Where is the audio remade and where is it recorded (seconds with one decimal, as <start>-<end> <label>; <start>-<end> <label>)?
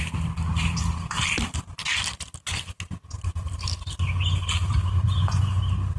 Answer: 0.0-6.0 recorded